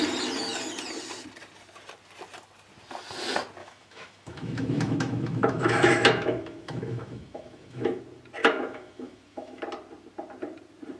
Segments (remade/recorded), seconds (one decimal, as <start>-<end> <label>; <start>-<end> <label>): 0.0-3.6 recorded; 3.6-8.0 remade; 8.0-8.4 recorded; 8.4-9.6 remade; 9.6-11.0 recorded

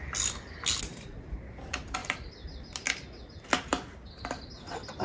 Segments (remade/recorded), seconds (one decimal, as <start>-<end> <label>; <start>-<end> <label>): 0.0-5.0 recorded